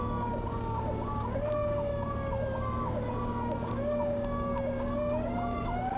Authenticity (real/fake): fake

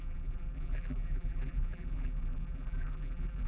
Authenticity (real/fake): fake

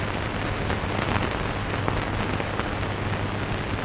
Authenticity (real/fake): real